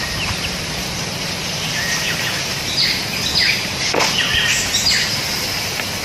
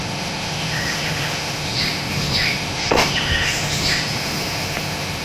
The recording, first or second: first